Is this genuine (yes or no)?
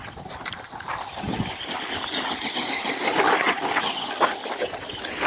yes